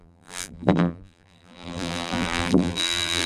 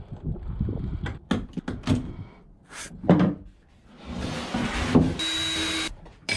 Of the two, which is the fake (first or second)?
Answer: first